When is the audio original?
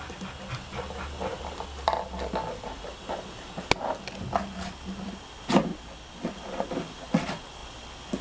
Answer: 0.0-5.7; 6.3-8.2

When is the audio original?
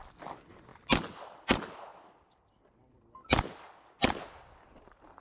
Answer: 0.0-5.2